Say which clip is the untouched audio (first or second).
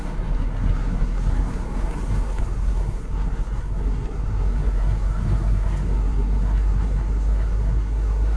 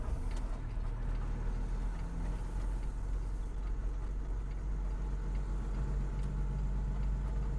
second